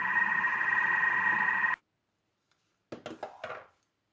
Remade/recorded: recorded